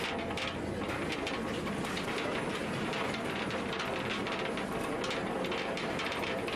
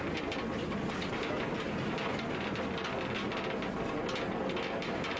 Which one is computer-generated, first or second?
first